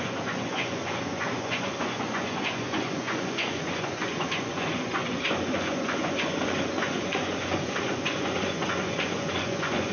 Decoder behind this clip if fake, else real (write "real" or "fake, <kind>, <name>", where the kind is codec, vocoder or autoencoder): fake, vocoder, Vocos